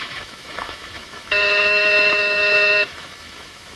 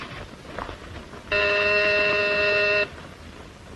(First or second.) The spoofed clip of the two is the first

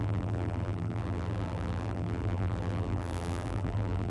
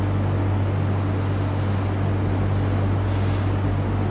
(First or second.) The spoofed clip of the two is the first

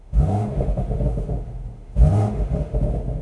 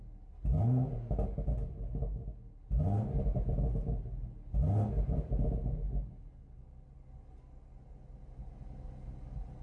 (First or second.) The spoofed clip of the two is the first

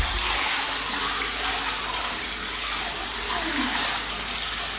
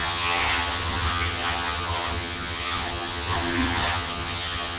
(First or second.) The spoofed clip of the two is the second